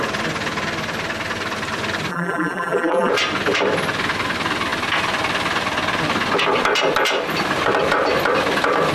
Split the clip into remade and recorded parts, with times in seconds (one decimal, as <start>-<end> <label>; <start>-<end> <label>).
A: 0.0-2.1 recorded; 2.1-3.1 remade; 3.1-8.9 recorded